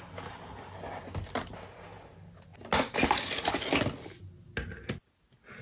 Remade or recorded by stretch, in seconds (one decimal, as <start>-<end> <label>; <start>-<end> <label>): 0.0-5.6 recorded